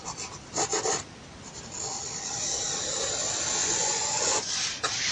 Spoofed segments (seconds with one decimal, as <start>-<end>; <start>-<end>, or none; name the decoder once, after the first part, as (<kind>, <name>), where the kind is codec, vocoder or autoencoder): 3.6-4.5 (vocoder, Vocos)